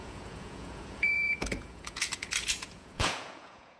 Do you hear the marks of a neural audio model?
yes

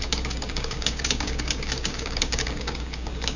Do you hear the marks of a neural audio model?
yes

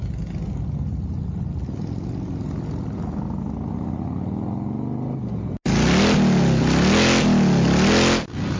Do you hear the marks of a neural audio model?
no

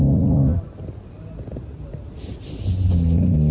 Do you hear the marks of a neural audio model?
no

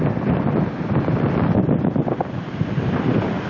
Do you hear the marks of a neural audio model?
no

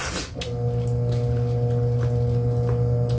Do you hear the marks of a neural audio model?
no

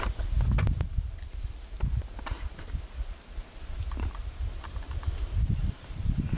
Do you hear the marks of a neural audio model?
yes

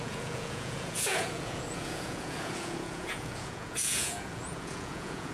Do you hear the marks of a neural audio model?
yes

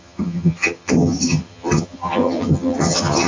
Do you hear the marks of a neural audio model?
yes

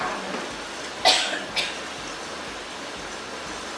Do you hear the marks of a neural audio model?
no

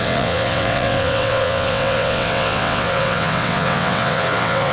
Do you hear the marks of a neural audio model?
yes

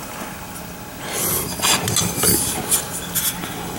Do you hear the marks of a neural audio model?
no